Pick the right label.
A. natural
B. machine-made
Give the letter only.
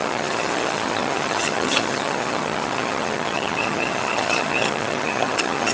B